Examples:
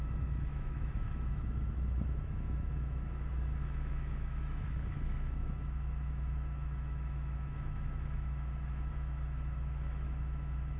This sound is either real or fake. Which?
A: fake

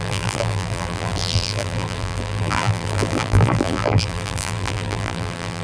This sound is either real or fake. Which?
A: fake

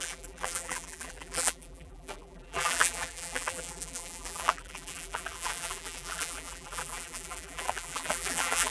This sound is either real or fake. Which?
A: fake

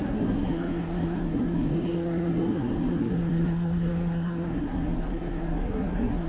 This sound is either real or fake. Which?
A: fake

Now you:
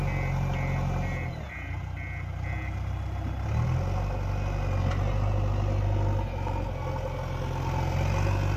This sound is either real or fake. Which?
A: real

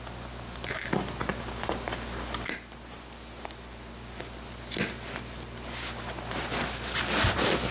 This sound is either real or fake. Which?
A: real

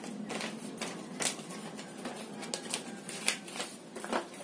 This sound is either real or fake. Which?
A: real